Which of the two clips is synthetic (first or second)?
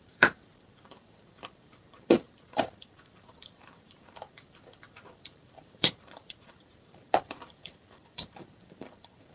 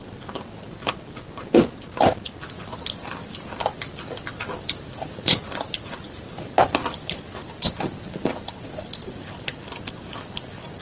first